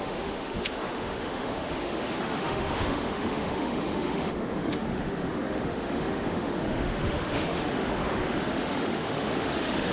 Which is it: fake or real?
fake